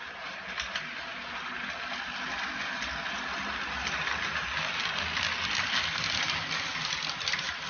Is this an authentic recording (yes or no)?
yes